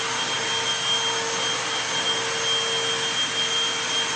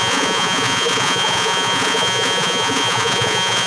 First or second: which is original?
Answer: first